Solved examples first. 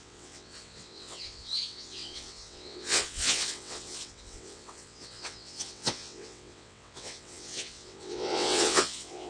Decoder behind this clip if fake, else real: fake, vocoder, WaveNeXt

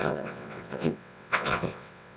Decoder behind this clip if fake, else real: fake, vocoder, WaveNeXt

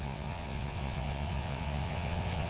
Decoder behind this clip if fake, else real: fake, vocoder, WaveNeXt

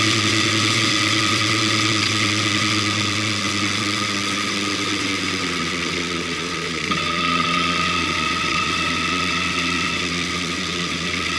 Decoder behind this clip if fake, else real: fake, vocoder, WaveNeXt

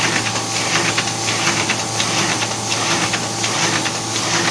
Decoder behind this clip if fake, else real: real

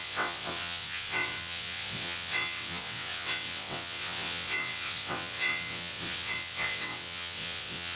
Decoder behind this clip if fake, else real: fake, vocoder, WaveNeXt